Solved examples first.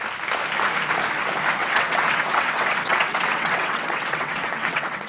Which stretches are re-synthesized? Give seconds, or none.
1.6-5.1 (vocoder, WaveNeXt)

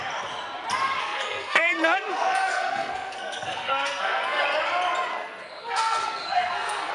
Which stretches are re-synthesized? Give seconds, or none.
1.0-4.4 (codec, SNAC); 5.1-6.9

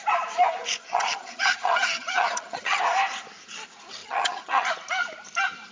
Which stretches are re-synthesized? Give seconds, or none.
0.8-2.8 (vocoder, HiFi-GAN); 4.0-4.7